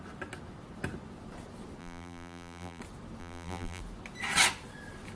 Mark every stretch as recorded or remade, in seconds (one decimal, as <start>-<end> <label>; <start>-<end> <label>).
0.0-1.8 recorded; 1.8-2.8 remade; 2.8-3.2 recorded; 3.2-3.8 remade; 3.8-5.2 recorded